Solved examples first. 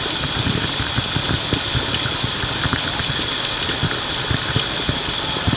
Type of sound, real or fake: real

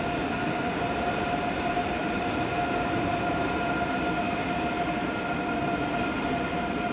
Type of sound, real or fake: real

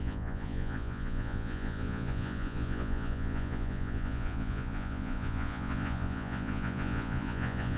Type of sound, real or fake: fake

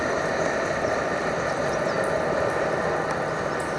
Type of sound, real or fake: real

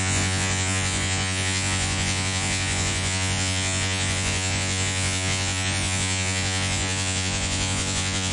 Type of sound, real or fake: fake